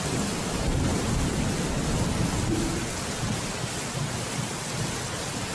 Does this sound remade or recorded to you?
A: recorded